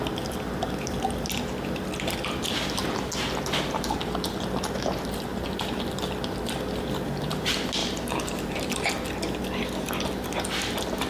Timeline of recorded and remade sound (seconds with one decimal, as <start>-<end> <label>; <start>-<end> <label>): 0.0-7.8 recorded; 7.8-8.9 remade; 8.9-11.1 recorded